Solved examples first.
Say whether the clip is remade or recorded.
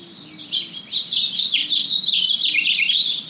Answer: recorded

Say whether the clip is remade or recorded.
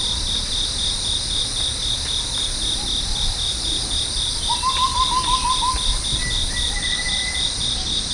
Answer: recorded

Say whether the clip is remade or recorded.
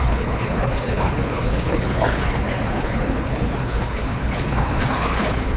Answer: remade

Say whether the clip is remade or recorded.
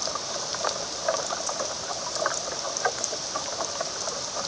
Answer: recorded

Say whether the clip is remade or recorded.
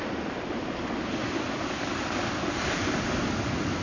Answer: recorded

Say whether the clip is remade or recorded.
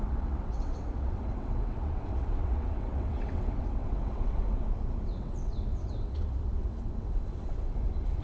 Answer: remade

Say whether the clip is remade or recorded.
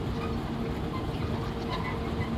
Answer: recorded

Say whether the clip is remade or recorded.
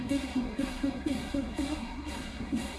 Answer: remade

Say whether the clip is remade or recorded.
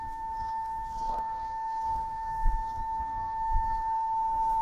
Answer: remade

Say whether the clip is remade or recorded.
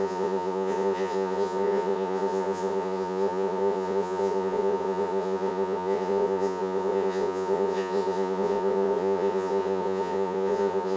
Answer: remade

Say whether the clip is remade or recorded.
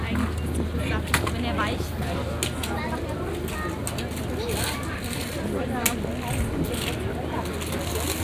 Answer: recorded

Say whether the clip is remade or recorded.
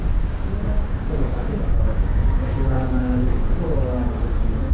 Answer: remade